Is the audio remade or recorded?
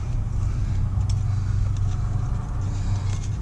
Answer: recorded